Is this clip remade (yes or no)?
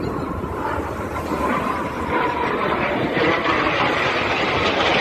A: yes